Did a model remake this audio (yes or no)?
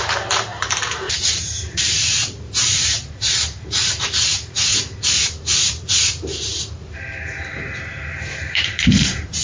yes